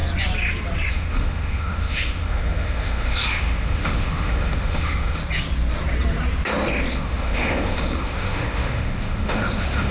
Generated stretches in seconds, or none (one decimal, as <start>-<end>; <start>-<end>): 0.9-5.2; 6.9-9.9